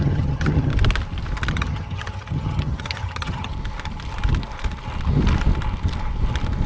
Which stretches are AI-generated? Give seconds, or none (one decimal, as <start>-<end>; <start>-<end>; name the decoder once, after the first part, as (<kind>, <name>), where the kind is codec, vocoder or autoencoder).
0.0-0.7 (vocoder, HiFi-GAN); 1.5-3.5